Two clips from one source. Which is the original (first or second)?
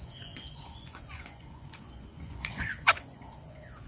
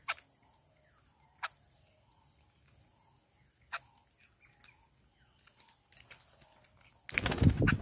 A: second